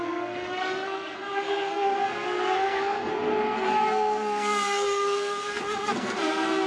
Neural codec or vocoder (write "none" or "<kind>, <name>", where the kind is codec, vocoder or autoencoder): codec, SNAC